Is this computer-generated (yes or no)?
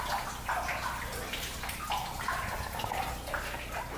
no